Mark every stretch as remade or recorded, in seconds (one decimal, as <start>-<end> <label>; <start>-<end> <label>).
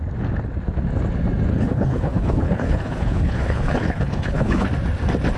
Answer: 0.0-1.5 recorded; 1.5-4.7 remade; 4.7-5.4 recorded